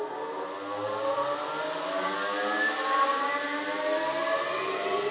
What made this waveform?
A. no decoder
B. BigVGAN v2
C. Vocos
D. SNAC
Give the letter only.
A